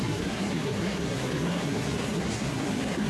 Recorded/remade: remade